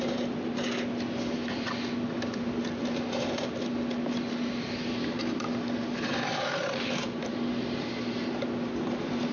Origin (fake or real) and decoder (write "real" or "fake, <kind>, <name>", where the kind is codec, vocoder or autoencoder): real